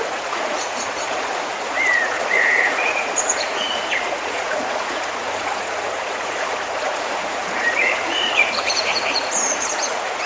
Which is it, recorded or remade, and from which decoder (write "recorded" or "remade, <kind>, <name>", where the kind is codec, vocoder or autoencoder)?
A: remade, vocoder, Vocos